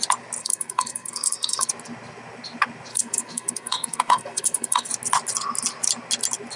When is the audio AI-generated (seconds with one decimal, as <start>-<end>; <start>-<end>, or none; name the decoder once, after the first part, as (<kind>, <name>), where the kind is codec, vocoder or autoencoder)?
0.4-1.7 (codec, SNAC); 2.9-4.9

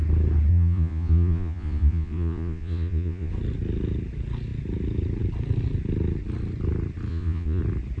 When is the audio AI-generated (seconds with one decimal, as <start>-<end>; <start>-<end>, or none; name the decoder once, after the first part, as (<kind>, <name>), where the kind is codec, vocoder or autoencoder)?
0.5-3.3 (vocoder, Vocos); 7.1-7.6